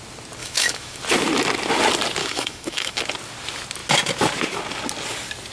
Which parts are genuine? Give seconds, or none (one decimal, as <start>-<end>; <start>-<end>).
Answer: 0.0-0.4; 1.0-2.2; 3.0-5.5